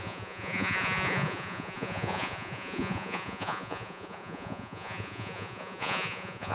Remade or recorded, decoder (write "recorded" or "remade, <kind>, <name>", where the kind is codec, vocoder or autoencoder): remade, vocoder, Vocos